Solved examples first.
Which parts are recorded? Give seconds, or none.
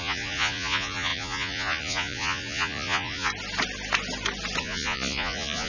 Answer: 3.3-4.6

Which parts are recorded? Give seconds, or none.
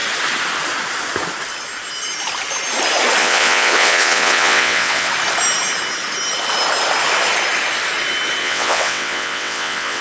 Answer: 0.0-3.2; 5.1-8.4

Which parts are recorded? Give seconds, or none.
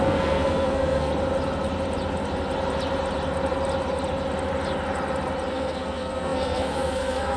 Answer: 1.1-5.5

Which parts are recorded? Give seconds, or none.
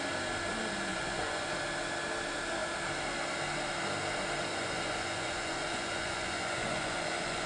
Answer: 0.0-0.9; 1.5-4.5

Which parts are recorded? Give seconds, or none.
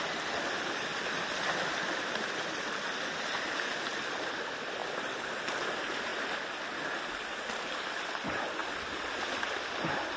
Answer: 0.0-10.2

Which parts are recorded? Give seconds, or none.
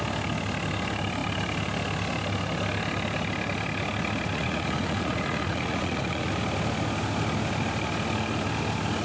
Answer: 0.0-4.3; 6.3-9.0